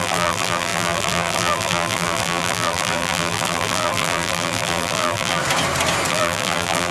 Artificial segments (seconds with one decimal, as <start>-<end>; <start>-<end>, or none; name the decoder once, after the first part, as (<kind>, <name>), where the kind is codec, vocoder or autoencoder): 0.0-5.4 (vocoder, BigVGAN v2); 6.1-6.9